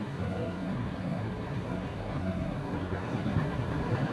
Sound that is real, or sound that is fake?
fake